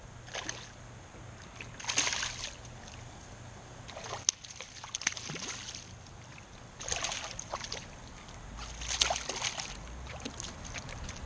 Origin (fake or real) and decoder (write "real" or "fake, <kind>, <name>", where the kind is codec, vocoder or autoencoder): real